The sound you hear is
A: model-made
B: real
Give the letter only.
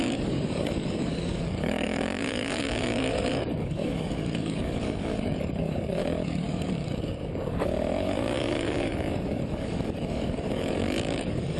A